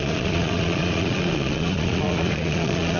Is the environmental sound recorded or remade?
remade